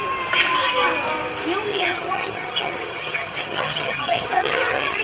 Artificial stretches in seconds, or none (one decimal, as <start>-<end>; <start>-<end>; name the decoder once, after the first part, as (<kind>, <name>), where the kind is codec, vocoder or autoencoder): 1.7-5.0 (vocoder, HiFi-GAN)